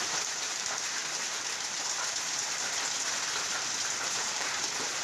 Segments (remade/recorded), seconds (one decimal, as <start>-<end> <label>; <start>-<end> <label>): 0.0-1.0 remade; 1.0-4.0 recorded; 4.0-5.0 remade